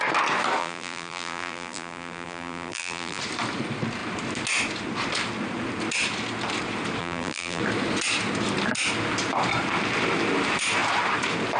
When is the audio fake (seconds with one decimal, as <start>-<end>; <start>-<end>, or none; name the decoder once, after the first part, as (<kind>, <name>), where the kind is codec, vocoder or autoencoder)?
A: 0.6-3.2 (vocoder, BigVGAN v2); 7.0-7.6